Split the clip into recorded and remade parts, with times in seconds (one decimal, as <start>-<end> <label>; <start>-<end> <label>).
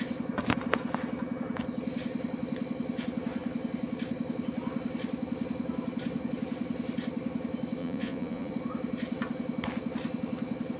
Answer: 0.0-7.8 recorded; 7.8-8.5 remade; 8.5-10.8 recorded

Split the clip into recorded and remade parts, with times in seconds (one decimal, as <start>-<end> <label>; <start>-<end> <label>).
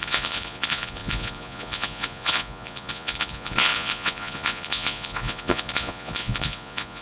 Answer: 0.0-7.0 remade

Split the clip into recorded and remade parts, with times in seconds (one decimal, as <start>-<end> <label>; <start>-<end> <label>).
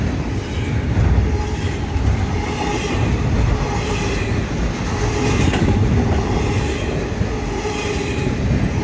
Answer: 0.0-8.8 recorded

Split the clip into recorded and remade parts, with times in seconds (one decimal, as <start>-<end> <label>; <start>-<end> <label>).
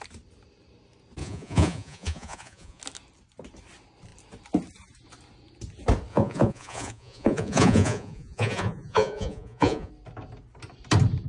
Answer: 0.0-1.2 recorded; 1.2-2.8 remade; 2.8-6.1 recorded; 6.1-9.9 remade; 9.9-11.3 recorded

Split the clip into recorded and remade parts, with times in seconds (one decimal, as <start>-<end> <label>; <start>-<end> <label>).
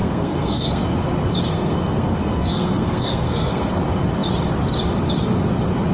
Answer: 0.0-0.8 remade; 0.8-1.5 recorded; 1.5-3.7 remade; 3.7-5.9 recorded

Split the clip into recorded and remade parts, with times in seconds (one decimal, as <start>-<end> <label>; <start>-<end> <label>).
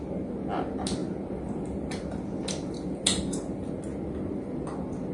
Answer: 0.0-5.1 recorded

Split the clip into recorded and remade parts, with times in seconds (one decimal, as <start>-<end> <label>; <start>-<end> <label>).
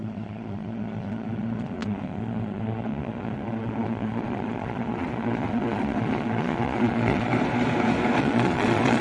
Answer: 0.0-7.3 remade; 7.3-8.2 recorded; 8.2-9.0 remade